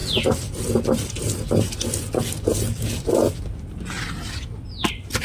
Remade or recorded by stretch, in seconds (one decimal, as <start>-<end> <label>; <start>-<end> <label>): 0.0-5.2 recorded